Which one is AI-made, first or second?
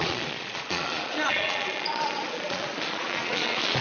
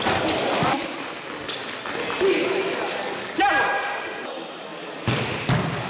first